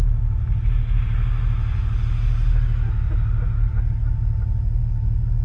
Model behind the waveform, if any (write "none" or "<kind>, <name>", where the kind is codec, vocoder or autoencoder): none